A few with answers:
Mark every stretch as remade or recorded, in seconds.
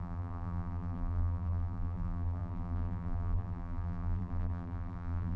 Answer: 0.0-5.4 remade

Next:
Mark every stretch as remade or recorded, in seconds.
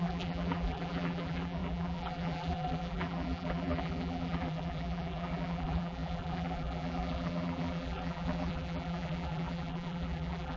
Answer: 0.0-10.6 remade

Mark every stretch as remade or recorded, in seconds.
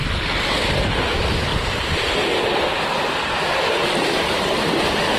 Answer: 0.0-1.5 recorded; 1.5-2.8 remade; 2.8-5.2 recorded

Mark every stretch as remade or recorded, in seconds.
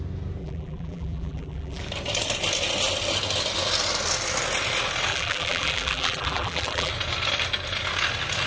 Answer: 0.0-0.4 recorded; 0.4-1.8 remade; 1.8-5.1 recorded; 5.1-6.9 remade; 6.9-8.5 recorded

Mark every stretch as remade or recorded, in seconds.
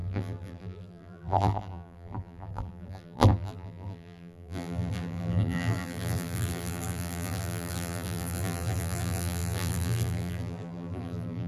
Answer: 0.0-11.5 remade